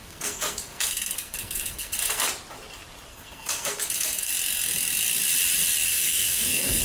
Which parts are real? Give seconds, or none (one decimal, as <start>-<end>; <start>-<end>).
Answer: 2.3-3.1; 4.3-5.9